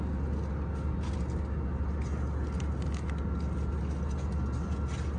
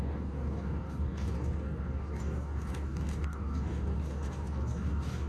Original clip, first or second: first